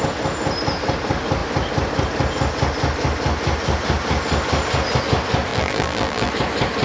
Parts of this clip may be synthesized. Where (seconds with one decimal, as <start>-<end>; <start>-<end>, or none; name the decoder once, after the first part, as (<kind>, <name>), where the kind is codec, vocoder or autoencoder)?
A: 5.5-6.3 (vocoder, BigVGAN v2)